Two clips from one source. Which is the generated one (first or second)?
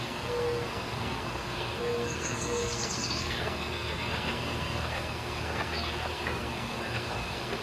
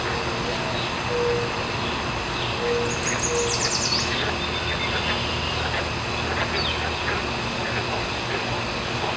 first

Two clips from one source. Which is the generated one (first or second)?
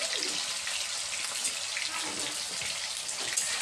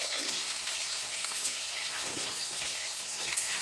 second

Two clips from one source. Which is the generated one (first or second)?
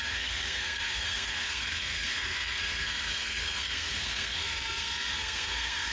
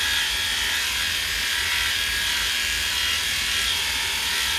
first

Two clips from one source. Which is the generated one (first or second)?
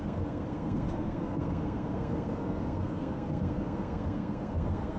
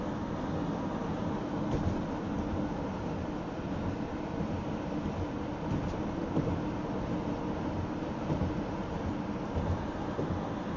first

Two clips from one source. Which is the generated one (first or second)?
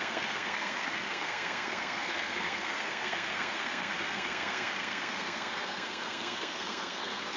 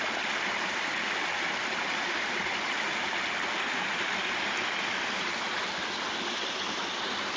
first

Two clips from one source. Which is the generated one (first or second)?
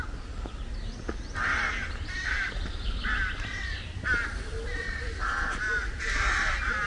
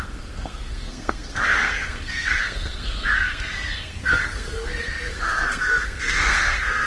second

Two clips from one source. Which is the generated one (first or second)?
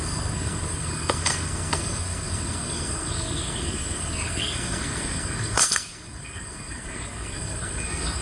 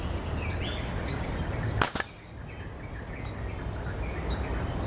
first